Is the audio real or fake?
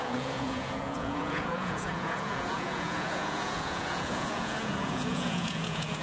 fake